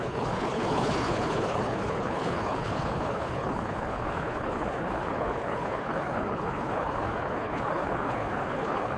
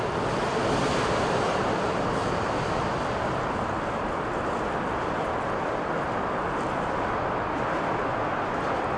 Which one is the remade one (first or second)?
first